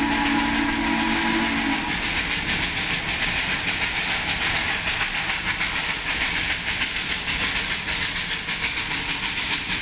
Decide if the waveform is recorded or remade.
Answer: recorded